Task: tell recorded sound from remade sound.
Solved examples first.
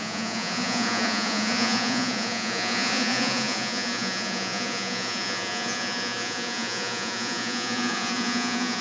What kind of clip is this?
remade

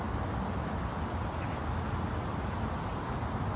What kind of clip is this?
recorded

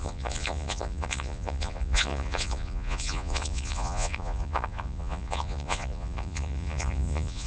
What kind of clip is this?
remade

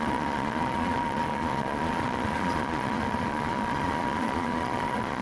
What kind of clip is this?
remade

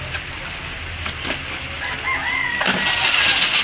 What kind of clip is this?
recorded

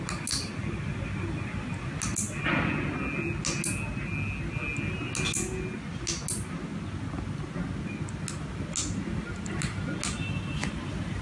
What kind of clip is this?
recorded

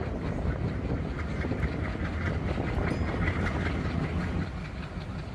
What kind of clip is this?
recorded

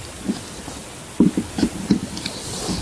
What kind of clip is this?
recorded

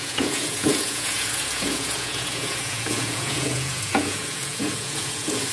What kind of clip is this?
remade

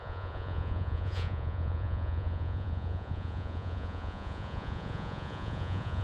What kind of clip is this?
remade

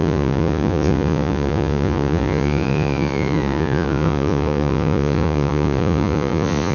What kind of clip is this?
remade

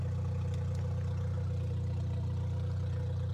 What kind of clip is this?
recorded